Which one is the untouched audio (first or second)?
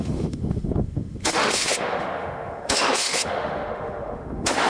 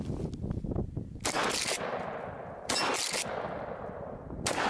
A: second